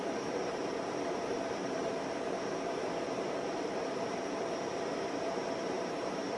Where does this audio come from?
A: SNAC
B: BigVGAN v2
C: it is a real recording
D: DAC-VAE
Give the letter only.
B